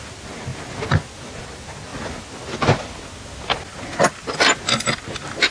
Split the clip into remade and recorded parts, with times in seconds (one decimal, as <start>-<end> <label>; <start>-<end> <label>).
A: 0.0-5.5 recorded